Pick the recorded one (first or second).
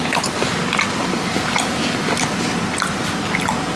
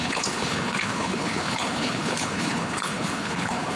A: first